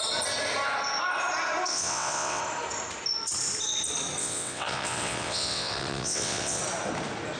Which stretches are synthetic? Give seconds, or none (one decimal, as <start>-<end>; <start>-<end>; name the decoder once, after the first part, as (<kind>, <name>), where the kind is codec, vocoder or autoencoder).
1.7-2.4 (vocoder, WaveNeXt); 4.2-6.6